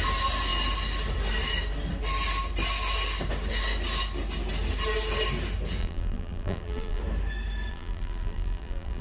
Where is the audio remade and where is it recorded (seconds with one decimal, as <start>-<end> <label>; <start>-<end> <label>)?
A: 0.0-5.8 recorded; 5.8-7.0 remade; 7.0-7.7 recorded; 7.7-9.0 remade